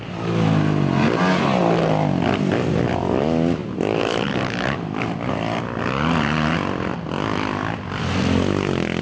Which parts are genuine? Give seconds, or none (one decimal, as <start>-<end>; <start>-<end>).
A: 0.0-3.6; 5.6-9.0